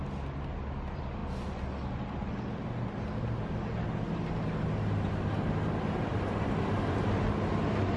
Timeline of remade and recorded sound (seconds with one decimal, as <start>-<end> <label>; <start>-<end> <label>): 0.0-8.0 recorded